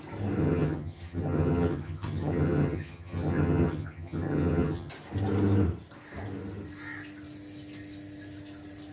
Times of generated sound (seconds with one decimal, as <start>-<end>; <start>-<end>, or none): 0.4-4.9